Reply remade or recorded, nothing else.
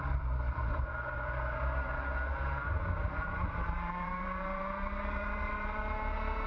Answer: remade